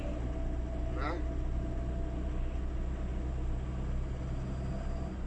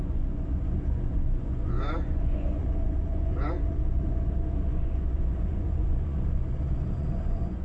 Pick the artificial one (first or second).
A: second